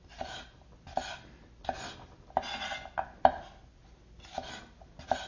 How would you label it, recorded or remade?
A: recorded